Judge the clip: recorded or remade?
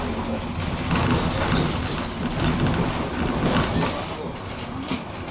recorded